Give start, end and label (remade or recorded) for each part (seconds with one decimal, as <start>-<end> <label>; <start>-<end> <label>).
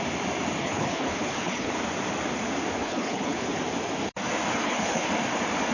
0.0-0.6 recorded; 0.6-1.7 remade; 1.7-2.8 recorded; 2.8-3.6 remade; 3.6-4.5 recorded; 4.5-5.1 remade; 5.1-5.7 recorded